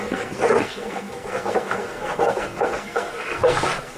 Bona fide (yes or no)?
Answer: no